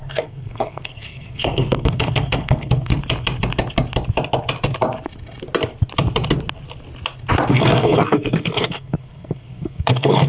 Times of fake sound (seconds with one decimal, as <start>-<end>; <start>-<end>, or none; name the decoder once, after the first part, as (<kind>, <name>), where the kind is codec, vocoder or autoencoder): 0.0-2.9 (codec, SNAC); 7.5-10.3